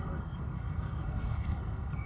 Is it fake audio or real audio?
fake